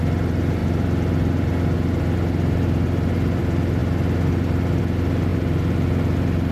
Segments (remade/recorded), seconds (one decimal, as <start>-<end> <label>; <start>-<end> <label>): 0.0-6.5 recorded